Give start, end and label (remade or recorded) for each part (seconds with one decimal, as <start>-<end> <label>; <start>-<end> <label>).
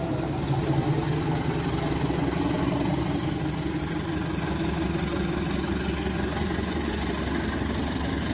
0.0-6.4 recorded; 6.4-7.1 remade; 7.1-8.3 recorded